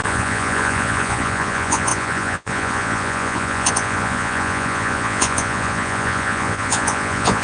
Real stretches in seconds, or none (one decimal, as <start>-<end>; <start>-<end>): none

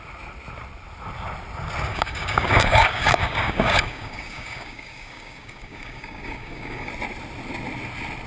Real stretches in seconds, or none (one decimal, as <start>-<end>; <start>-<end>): 0.0-1.9; 6.9-8.3